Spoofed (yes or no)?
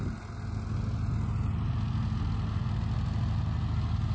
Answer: no